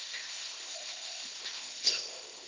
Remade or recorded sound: remade